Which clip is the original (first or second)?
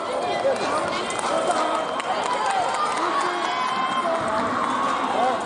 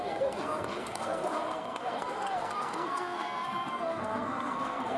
first